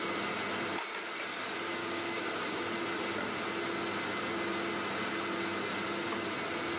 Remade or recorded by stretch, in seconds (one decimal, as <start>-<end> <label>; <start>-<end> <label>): 0.0-1.8 recorded; 1.8-2.6 remade; 2.6-6.8 recorded